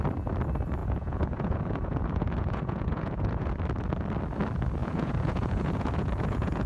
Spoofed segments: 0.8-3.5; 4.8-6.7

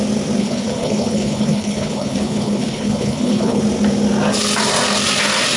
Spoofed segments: 0.4-3.6

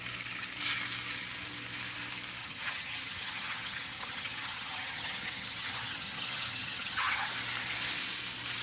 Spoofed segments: 2.4-7.3

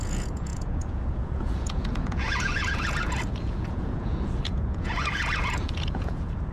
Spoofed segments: 0.0-6.5

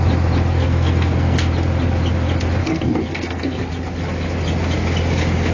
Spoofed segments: 0.5-1.5; 2.6-3.7